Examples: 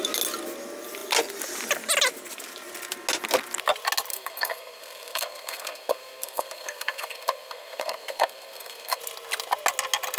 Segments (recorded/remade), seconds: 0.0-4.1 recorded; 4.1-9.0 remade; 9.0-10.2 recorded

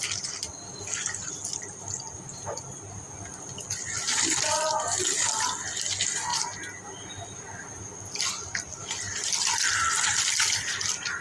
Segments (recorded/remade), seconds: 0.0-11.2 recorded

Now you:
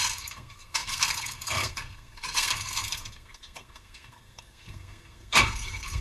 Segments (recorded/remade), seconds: 0.0-6.0 remade

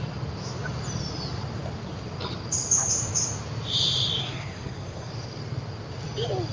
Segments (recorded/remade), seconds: 0.0-4.2 recorded; 4.2-5.1 remade; 5.1-6.5 recorded

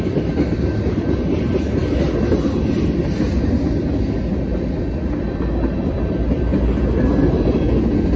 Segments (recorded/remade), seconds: 0.0-8.2 recorded

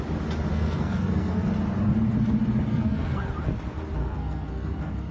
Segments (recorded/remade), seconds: 0.0-0.5 recorded; 0.5-1.5 remade; 1.5-2.7 recorded; 2.7-3.2 remade; 3.2-4.0 recorded; 4.0-5.1 remade